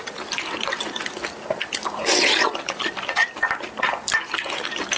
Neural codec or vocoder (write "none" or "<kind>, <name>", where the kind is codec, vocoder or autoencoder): none